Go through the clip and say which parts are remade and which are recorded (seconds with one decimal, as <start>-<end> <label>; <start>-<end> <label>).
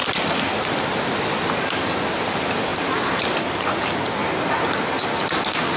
0.0-2.7 recorded; 2.7-3.8 remade; 3.8-4.2 recorded; 4.2-5.0 remade; 5.0-5.8 recorded